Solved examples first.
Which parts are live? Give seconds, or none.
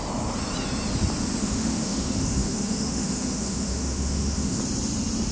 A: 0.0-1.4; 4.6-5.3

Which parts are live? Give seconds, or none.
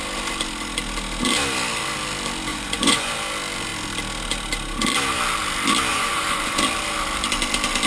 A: 0.0-2.5; 3.1-5.9; 6.6-7.9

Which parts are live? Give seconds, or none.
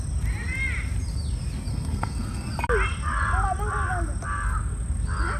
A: 0.0-1.7; 2.5-5.4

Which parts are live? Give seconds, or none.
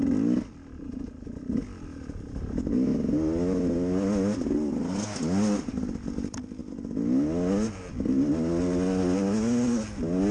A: 0.0-10.3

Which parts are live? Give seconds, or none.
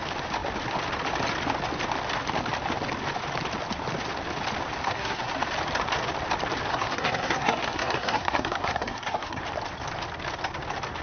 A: 0.0-4.8; 5.3-6.7; 9.4-11.0